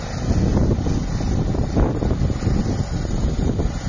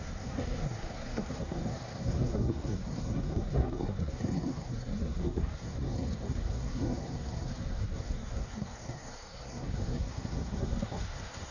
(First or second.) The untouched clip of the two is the first